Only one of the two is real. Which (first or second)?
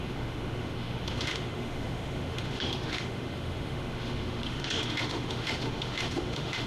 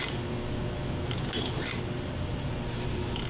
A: second